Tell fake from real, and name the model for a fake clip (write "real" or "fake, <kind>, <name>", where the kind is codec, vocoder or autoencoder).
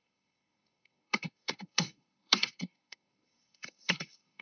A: fake, codec, SNAC